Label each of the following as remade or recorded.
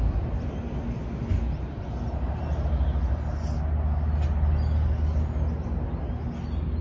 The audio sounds recorded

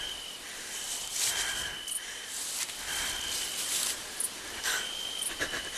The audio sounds remade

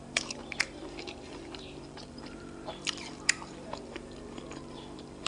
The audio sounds remade